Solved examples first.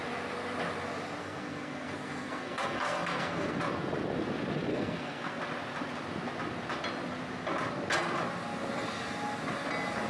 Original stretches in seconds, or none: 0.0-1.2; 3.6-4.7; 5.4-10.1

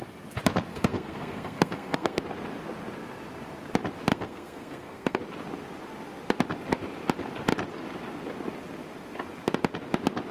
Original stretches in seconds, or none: 0.0-0.7; 2.2-4.1; 5.2-10.3

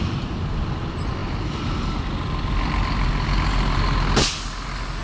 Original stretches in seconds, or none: 0.0-5.0

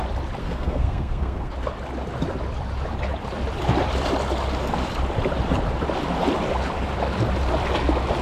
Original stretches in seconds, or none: 0.0-0.4; 1.5-8.2

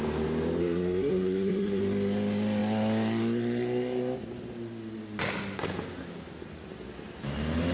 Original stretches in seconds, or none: 0.0-0.6; 1.8-7.7